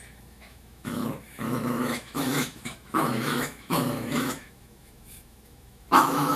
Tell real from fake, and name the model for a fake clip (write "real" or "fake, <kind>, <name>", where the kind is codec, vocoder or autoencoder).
fake, autoencoder, DAC-VAE